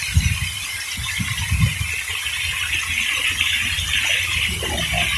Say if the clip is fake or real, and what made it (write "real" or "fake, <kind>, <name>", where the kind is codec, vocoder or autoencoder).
real